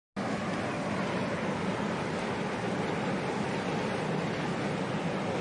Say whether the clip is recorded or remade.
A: recorded